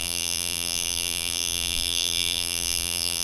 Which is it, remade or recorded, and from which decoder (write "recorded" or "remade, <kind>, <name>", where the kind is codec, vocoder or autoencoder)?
remade, vocoder, BigVGAN v2